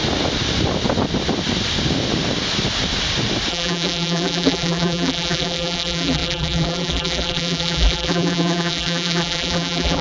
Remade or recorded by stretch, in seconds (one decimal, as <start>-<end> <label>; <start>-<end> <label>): 0.0-3.5 recorded; 3.5-10.0 remade

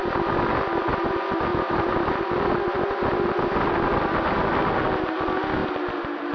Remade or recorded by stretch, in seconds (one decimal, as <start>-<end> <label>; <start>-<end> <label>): 0.0-1.5 recorded; 1.5-2.2 remade; 2.2-5.6 recorded; 5.6-6.3 remade

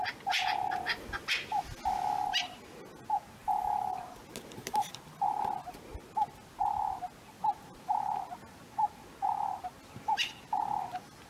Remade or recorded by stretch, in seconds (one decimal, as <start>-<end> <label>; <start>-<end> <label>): 0.0-11.3 recorded

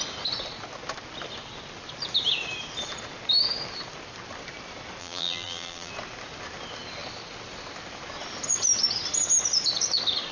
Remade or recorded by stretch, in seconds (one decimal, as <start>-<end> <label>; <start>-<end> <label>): 0.0-5.0 recorded; 5.0-5.9 remade; 5.9-10.3 recorded

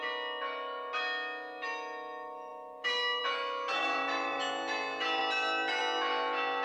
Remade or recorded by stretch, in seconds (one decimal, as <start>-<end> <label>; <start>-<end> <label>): 0.0-3.8 recorded; 3.8-4.4 remade; 4.4-6.6 recorded

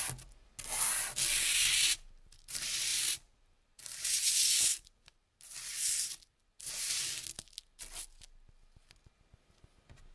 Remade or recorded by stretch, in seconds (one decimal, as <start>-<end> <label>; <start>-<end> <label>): 0.0-2.9 recorded; 2.9-7.2 remade; 7.2-10.1 recorded

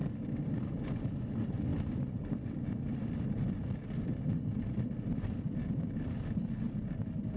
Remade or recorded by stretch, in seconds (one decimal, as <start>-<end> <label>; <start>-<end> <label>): 0.0-1.7 recorded; 1.7-6.1 remade; 6.1-7.4 recorded

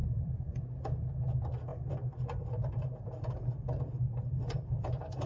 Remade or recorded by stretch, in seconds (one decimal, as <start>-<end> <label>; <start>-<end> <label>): 0.0-0.6 remade; 0.6-1.7 recorded; 1.7-5.3 remade